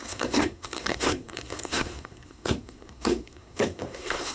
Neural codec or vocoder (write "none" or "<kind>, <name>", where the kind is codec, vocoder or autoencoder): codec, SNAC